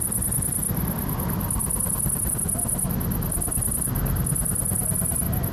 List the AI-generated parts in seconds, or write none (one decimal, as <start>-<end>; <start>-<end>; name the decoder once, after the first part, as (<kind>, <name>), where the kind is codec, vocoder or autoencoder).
none